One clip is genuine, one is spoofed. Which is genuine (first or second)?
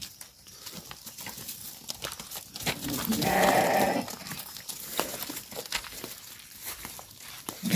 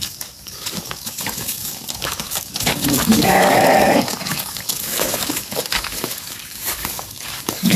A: first